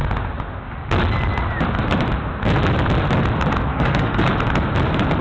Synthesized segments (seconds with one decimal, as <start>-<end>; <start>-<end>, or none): 3.7-4.2